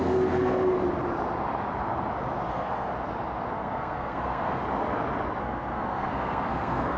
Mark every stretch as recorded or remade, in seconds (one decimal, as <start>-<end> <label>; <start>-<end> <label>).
0.0-0.8 remade; 0.8-2.5 recorded; 2.5-2.9 remade; 2.9-3.5 recorded; 3.5-4.6 remade; 4.6-5.4 recorded; 5.4-7.0 remade